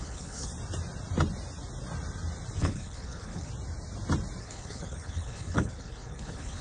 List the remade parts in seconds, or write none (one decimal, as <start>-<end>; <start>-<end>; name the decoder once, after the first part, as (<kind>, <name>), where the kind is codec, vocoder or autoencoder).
0.0-0.5 (codec, HILCodec); 2.6-3.5; 4.4-6.6